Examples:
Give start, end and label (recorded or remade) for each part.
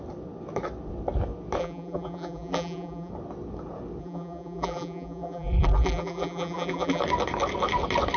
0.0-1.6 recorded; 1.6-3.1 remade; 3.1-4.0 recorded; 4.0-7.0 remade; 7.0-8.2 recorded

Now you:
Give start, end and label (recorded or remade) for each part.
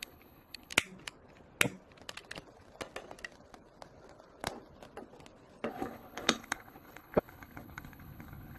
0.0-0.7 remade; 0.7-5.7 recorded; 5.7-8.6 remade